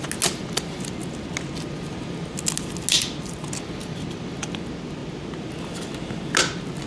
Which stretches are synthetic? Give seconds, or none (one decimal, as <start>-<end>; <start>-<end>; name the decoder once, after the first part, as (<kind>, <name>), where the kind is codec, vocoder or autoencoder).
none